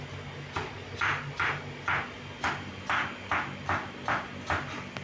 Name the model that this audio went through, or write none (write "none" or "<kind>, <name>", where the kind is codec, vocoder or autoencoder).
none